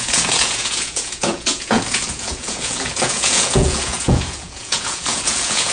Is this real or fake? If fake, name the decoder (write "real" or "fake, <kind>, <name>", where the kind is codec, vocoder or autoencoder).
fake, vocoder, Vocos